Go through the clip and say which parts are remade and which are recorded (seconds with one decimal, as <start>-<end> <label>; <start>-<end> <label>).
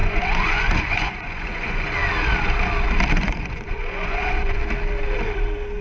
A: 0.0-2.0 remade; 2.0-3.1 recorded; 3.1-4.6 remade; 4.6-5.8 recorded